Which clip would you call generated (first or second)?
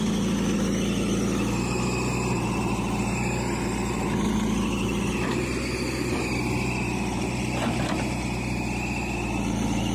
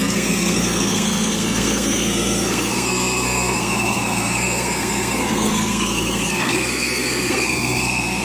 second